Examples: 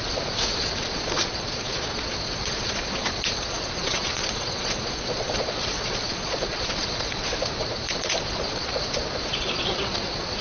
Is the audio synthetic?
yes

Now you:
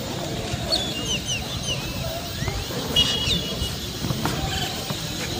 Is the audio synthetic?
no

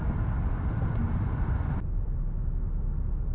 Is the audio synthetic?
no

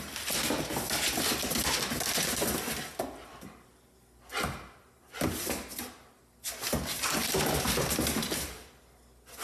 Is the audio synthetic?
no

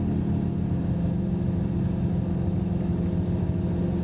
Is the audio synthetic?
no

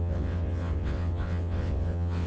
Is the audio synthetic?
yes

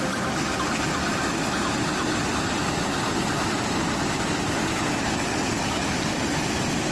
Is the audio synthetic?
no